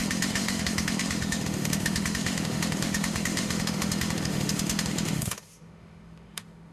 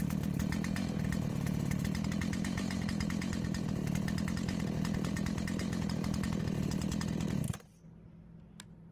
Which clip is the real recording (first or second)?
second